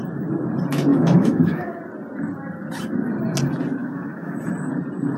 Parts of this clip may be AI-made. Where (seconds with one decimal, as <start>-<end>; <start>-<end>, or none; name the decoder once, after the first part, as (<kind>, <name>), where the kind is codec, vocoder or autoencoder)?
0.9-1.8 (autoencoder, DAC-VAE); 3.8-4.4